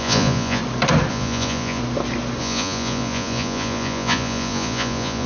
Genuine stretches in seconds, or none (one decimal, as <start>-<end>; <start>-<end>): 0.6-1.1; 1.8-2.4